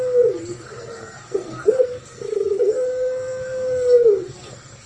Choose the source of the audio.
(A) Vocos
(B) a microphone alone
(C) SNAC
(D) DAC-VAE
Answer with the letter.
C